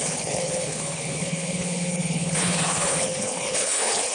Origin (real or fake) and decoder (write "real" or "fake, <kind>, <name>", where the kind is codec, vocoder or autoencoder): fake, codec, HILCodec